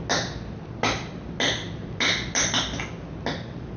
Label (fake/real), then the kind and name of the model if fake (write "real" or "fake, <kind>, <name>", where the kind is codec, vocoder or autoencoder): real